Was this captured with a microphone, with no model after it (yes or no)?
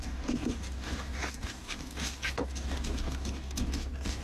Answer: no